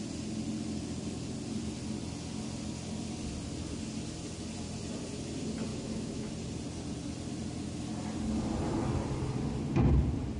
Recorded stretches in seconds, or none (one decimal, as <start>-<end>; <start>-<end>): 0.0-5.7; 6.3-10.4